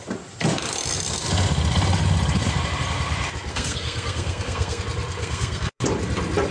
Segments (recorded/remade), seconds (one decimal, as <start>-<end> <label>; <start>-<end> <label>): 0.0-3.5 recorded; 3.5-4.8 remade; 4.8-5.2 recorded; 5.2-5.8 remade; 5.8-6.5 recorded